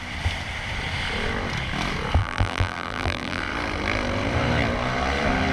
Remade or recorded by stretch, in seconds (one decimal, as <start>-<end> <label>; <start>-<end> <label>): 0.0-2.2 recorded; 2.2-3.4 remade; 3.4-5.5 recorded